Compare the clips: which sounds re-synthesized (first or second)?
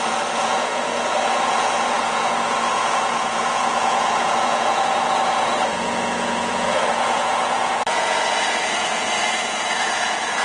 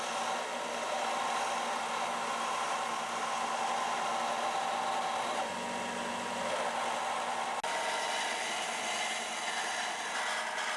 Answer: first